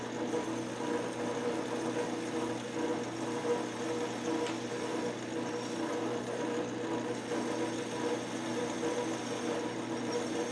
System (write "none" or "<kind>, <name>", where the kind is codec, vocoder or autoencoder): none